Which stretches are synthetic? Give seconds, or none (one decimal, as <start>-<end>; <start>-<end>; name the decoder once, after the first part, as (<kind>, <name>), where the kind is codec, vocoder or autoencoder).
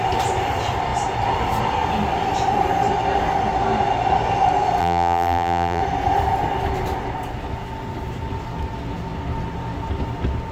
4.8-5.8 (vocoder, BigVGAN v2)